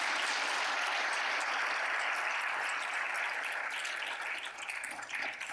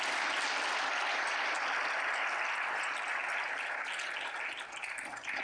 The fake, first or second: first